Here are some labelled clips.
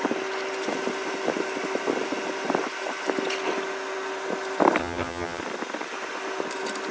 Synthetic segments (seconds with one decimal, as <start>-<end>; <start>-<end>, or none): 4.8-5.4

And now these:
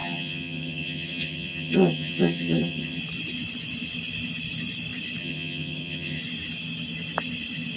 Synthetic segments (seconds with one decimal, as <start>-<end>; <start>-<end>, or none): 0.0-3.0; 5.2-6.2

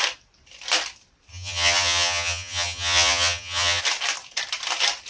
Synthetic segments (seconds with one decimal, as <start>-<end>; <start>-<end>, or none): 1.3-3.8

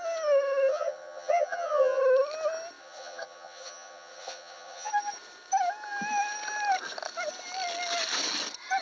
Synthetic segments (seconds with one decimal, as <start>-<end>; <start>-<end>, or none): 0.7-2.0; 2.8-4.9

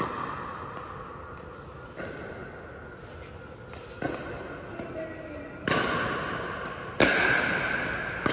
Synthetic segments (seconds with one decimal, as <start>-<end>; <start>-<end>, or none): none

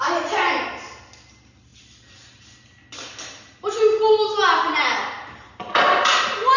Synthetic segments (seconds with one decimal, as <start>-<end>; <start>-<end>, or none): none

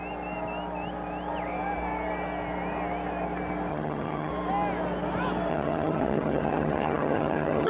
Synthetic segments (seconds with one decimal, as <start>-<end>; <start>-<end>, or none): 3.7-4.3; 5.5-7.7

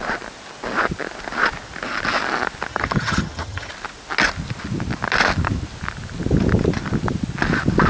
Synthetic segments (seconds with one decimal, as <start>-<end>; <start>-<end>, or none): 2.7-3.7